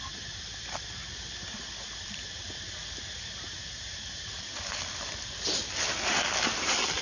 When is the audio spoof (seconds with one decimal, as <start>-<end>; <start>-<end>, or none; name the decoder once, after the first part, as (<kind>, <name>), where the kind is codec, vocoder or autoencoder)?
1.0-5.1 (vocoder, BigVGAN v2)